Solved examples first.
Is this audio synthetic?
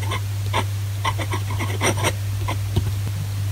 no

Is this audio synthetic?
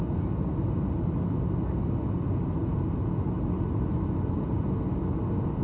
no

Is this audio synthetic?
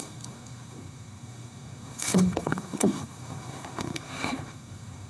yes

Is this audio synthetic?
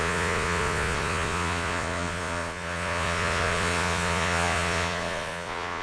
yes